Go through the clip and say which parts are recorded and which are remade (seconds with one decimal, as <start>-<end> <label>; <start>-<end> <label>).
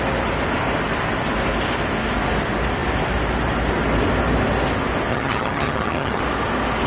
0.0-5.1 recorded; 5.1-6.2 remade; 6.2-6.9 recorded